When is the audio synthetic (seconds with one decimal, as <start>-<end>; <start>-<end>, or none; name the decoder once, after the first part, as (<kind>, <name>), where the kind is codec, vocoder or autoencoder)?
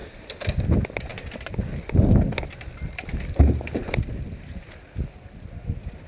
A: none